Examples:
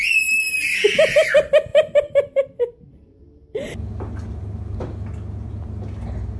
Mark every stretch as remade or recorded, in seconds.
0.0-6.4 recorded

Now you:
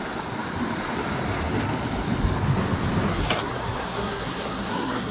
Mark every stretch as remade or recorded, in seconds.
0.0-3.1 recorded; 3.1-5.1 remade

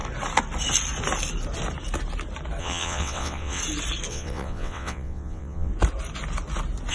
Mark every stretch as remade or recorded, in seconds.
0.0-2.6 recorded; 2.6-3.6 remade; 3.6-4.1 recorded; 4.1-5.7 remade; 5.7-6.9 recorded

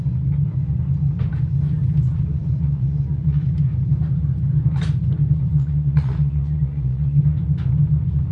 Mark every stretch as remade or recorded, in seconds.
0.0-2.4 recorded; 2.4-3.4 remade; 3.4-5.5 recorded; 5.5-7.2 remade; 7.2-8.3 recorded

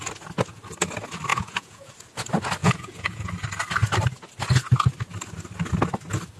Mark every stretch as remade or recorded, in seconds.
0.0-1.3 recorded; 1.3-1.9 remade; 1.9-2.6 recorded; 2.6-3.3 remade; 3.3-6.4 recorded

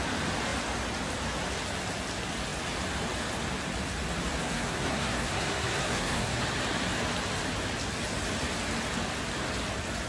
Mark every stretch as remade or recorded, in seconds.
0.0-4.4 recorded; 4.4-6.4 remade; 6.4-10.1 recorded